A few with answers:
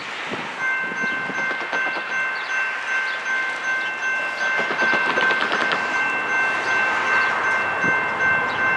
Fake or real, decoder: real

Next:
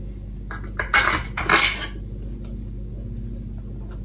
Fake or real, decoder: real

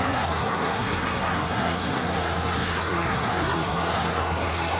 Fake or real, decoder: fake, codec, SNAC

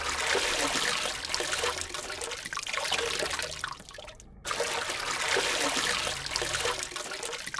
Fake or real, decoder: real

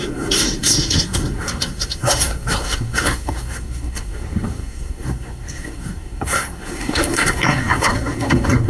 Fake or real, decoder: fake, codec, SNAC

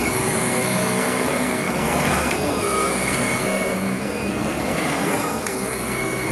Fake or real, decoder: fake, codec, SNAC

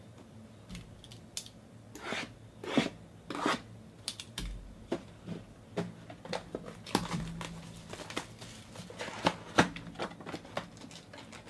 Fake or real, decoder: real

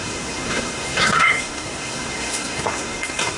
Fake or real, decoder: fake, codec, SNAC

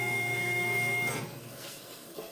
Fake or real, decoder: fake, codec, SNAC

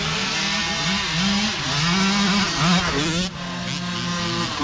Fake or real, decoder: real